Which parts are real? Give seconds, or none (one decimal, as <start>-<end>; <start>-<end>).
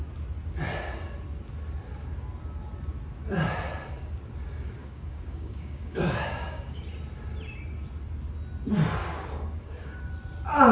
0.0-4.8; 6.8-9.0; 10.0-10.7